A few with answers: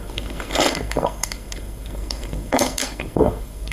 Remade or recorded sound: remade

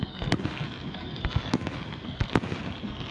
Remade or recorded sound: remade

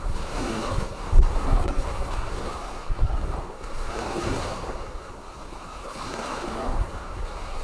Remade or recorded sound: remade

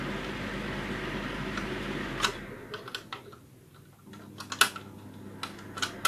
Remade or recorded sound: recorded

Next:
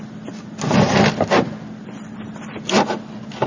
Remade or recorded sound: recorded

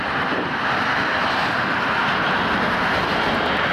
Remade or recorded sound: recorded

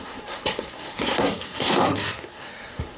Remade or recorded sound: remade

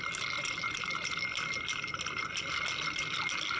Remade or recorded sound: recorded